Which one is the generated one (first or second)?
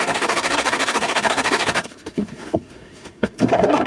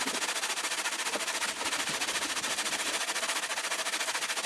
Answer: first